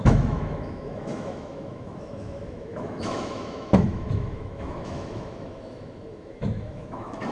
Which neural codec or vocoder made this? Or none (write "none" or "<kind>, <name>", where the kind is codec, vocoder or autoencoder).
autoencoder, DAC-VAE